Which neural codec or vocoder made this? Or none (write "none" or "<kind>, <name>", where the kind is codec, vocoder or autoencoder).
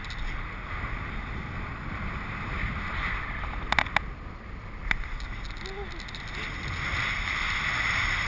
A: none